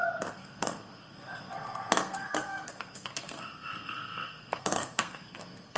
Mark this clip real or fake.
fake